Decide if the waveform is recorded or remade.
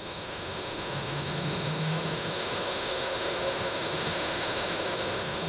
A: remade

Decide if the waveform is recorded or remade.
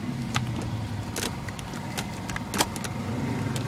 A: recorded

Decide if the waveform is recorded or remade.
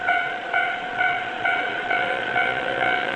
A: remade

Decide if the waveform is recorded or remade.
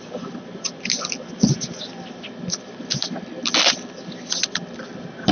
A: recorded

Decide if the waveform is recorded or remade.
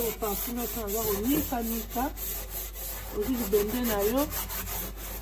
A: recorded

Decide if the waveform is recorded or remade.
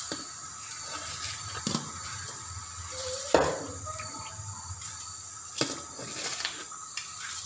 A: recorded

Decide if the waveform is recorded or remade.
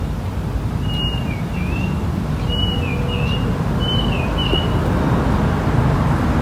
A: recorded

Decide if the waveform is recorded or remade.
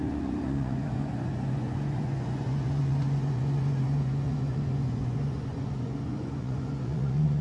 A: remade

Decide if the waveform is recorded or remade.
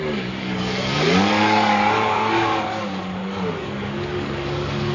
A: remade